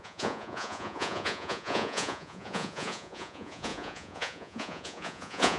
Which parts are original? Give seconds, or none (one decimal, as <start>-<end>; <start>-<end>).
none